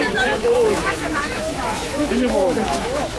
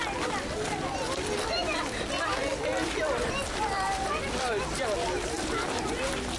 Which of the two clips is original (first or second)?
second